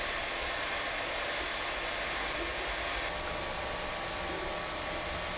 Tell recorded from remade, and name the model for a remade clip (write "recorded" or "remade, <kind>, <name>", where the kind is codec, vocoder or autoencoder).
recorded